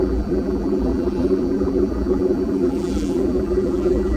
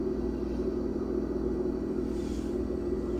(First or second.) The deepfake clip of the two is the first